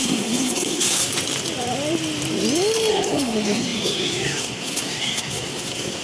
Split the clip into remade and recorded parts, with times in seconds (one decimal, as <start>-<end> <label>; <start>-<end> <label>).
0.0-1.1 remade; 1.1-2.9 recorded; 2.9-6.0 remade